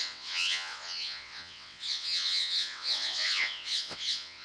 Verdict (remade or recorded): remade